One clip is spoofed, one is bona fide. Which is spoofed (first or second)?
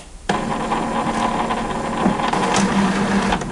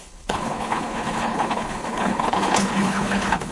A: second